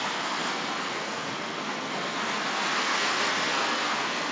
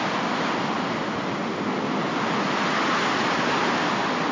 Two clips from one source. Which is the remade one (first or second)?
first